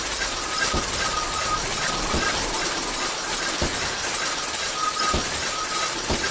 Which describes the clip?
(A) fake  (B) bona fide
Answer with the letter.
A